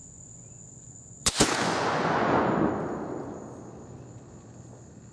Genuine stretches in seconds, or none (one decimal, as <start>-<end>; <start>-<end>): 2.7-5.1